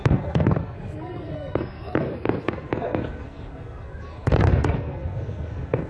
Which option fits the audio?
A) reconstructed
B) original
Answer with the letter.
A